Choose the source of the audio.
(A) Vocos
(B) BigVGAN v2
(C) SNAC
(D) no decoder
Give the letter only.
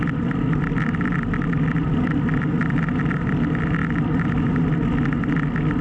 D